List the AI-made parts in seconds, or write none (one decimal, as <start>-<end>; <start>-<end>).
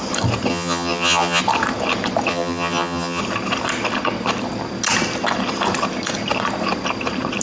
0.5-1.4; 2.3-3.2